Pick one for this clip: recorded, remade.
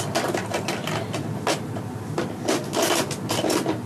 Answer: recorded